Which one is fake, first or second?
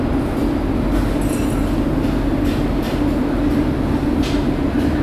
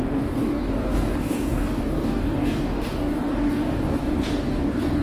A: second